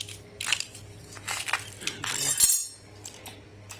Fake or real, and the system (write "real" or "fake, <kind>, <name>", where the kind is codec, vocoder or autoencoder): real